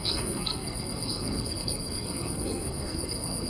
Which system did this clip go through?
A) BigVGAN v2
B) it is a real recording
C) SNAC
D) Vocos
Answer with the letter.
C